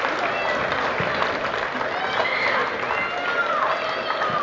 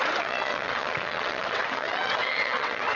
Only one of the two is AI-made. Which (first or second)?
second